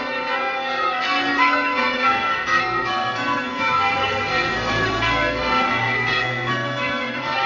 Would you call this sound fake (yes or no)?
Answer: yes